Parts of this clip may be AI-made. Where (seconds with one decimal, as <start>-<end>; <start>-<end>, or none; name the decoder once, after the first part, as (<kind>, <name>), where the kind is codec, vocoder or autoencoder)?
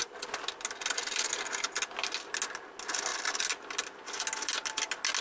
none